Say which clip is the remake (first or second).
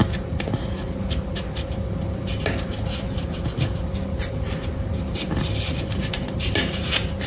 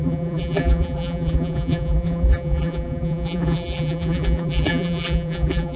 second